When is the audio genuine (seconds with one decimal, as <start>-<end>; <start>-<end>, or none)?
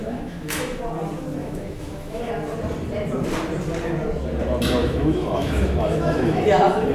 0.8-1.4; 2.3-4.8; 6.4-6.9